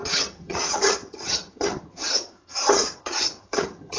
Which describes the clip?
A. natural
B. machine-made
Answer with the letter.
B